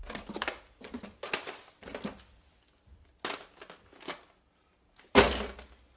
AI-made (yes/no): no